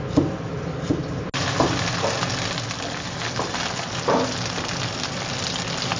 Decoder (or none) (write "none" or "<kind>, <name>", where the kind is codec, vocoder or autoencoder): none